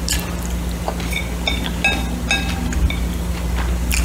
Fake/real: real